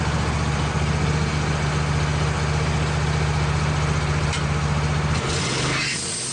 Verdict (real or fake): real